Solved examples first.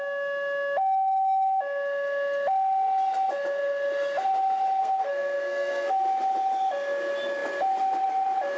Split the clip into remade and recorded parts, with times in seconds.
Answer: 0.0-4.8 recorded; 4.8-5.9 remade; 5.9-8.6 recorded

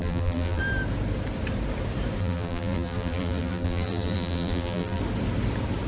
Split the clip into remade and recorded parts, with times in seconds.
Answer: 0.0-0.6 remade; 0.6-2.2 recorded; 2.2-5.0 remade; 5.0-5.9 recorded

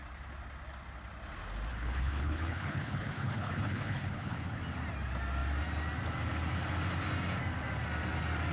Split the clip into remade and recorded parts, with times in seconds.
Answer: 0.0-1.7 recorded; 1.7-4.6 remade; 4.6-8.5 recorded

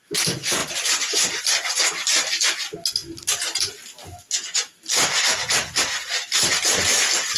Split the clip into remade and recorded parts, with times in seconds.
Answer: 0.0-7.4 recorded

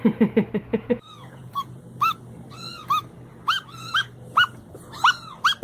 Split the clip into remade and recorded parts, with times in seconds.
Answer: 0.0-0.7 recorded; 0.7-1.8 remade; 1.8-5.6 recorded

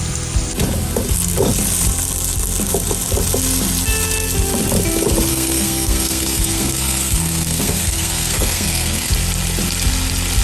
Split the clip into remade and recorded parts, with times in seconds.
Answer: 0.0-5.3 recorded; 5.3-9.1 remade; 9.1-10.4 recorded

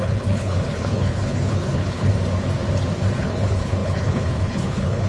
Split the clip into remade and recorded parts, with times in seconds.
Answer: 0.0-2.1 remade; 2.1-3.2 recorded; 3.2-5.1 remade

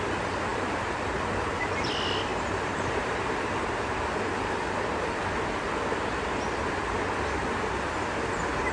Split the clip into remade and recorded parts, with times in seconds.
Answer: 0.0-0.5 recorded; 0.5-1.9 remade; 1.9-2.3 recorded; 2.3-4.0 remade; 4.0-8.7 recorded